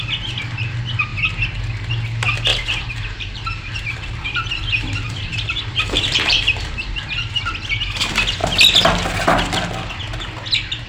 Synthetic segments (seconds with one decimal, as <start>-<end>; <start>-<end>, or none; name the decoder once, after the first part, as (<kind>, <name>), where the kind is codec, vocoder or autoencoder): 2.5-7.4 (vocoder, BigVGAN v2)